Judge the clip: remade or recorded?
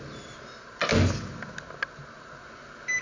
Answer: recorded